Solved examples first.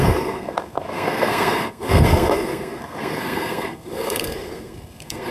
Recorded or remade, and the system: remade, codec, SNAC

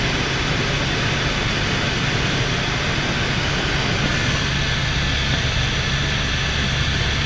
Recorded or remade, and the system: recorded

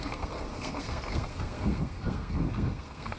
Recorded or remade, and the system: remade, codec, SNAC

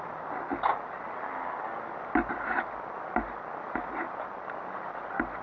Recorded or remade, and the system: recorded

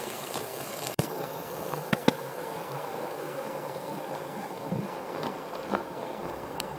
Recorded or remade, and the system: remade, codec, SNAC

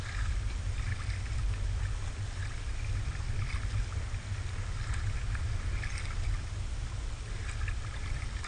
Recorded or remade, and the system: recorded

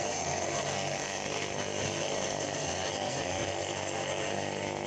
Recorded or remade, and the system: remade, codec, SNAC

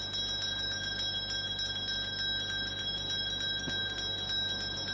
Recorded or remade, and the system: recorded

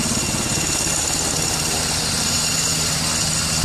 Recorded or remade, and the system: recorded